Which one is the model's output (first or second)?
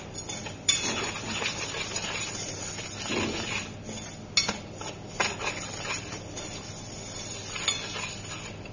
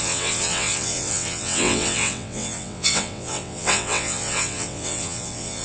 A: second